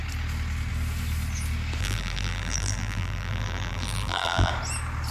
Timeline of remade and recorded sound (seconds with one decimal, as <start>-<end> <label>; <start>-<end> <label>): 0.0-1.8 recorded; 1.8-4.5 remade; 4.5-5.1 recorded